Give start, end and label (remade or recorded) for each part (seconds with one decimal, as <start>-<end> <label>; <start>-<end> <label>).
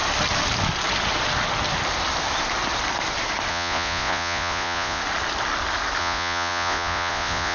0.0-3.5 recorded; 3.5-5.0 remade; 5.0-6.0 recorded; 6.0-7.5 remade